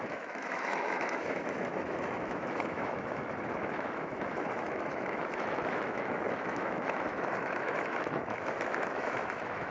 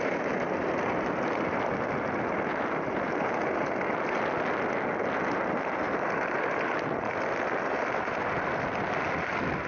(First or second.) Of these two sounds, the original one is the second